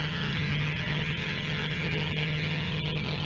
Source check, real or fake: fake